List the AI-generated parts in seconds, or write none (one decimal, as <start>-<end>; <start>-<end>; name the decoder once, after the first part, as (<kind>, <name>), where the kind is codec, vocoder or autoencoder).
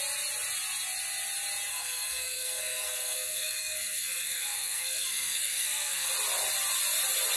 1.7-6.1 (codec, SNAC)